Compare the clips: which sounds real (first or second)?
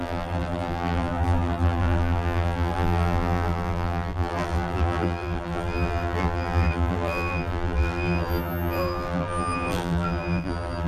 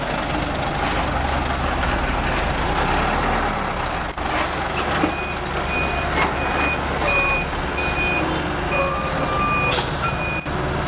second